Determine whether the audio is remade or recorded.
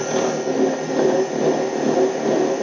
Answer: recorded